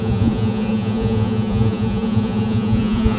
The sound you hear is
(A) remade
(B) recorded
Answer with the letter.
A